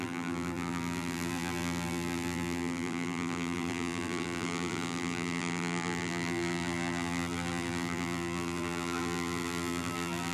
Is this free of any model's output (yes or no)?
no